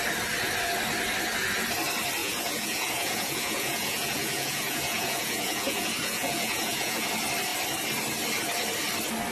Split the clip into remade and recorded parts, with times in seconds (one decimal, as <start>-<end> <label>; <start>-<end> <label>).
0.0-2.2 recorded; 2.2-7.1 remade; 7.1-9.3 recorded